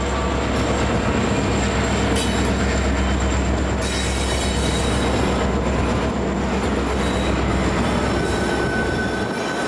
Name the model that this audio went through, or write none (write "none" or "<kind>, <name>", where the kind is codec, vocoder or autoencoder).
none